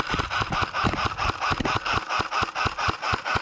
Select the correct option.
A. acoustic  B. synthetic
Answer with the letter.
A